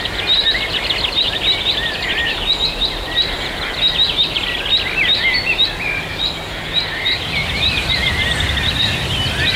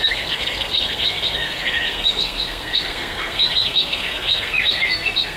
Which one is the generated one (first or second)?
second